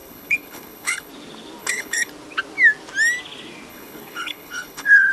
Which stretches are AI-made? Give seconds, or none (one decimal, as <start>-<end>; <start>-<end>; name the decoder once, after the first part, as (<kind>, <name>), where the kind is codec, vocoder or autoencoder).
0.0-1.1 (codec, HILCodec); 1.6-2.1; 3.7-5.1